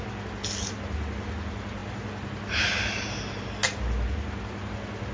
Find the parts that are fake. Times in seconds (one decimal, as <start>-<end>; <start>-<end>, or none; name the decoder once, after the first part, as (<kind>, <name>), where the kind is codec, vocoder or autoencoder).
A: none